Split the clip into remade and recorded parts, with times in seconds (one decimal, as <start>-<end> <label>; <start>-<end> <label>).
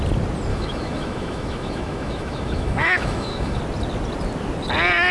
0.0-0.5 recorded; 0.5-3.6 remade; 3.6-5.1 recorded